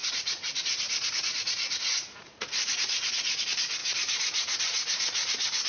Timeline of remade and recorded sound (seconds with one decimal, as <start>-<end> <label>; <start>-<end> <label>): 0.0-3.4 remade; 3.4-3.8 recorded; 3.8-5.7 remade